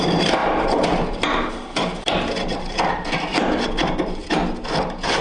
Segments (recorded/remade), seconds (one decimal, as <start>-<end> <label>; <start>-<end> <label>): 0.0-4.2 remade; 4.2-4.8 recorded; 4.8-5.2 remade